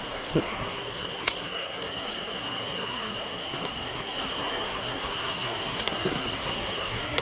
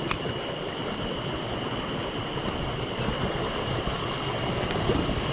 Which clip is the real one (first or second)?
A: second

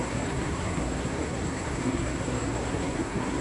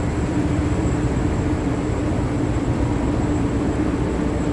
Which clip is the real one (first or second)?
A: second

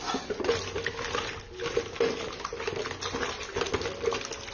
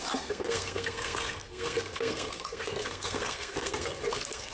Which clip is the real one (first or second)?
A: first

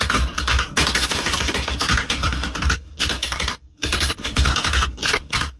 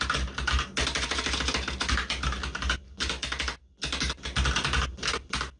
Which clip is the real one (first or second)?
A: second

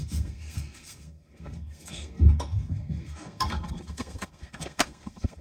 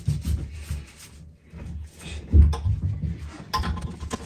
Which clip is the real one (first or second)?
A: second